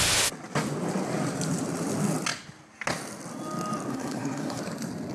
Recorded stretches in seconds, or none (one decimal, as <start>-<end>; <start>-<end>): 0.0-3.9; 4.6-5.1